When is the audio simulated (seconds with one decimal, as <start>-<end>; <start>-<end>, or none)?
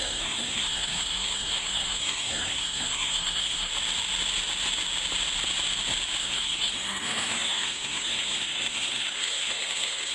0.0-3.7; 6.2-10.1